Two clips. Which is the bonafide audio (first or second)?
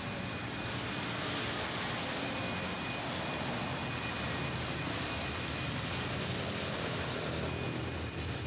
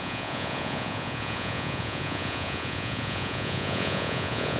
first